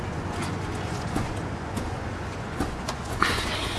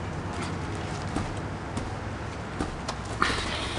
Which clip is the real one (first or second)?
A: second